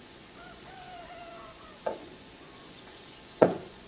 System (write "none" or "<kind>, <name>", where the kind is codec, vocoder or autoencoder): vocoder, Vocos